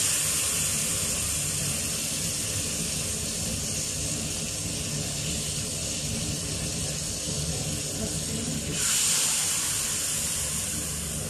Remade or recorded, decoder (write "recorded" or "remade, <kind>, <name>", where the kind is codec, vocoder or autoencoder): recorded